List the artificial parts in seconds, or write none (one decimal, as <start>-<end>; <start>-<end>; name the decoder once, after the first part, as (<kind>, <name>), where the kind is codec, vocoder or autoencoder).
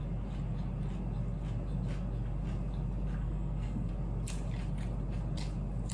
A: 3.2-3.9 (codec, SNAC)